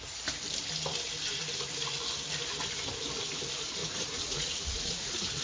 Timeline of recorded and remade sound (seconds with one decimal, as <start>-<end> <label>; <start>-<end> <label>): 0.0-3.8 recorded; 3.8-5.4 remade